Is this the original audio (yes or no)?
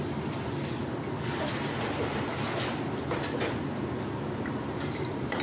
yes